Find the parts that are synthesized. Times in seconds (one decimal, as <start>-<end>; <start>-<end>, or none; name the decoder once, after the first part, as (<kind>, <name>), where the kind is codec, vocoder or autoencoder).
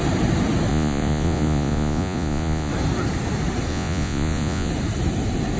0.7-2.7 (vocoder, Vocos); 3.7-4.7